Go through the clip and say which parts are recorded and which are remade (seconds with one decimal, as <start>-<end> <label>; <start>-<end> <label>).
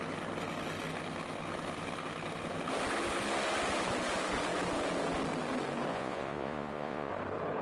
0.0-5.9 recorded; 5.9-7.1 remade; 7.1-7.6 recorded